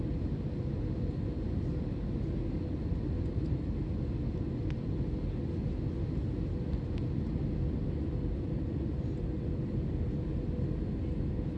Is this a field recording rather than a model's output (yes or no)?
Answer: yes